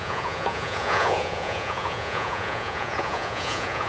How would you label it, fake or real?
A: fake